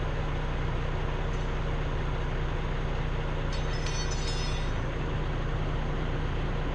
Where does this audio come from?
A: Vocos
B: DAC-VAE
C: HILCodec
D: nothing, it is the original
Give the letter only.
D